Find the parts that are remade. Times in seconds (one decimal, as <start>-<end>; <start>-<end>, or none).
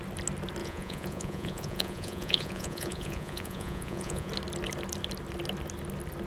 0.6-4.3